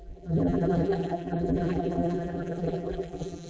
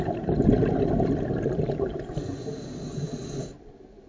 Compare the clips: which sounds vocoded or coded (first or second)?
first